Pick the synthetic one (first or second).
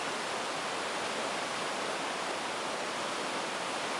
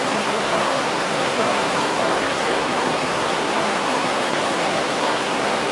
second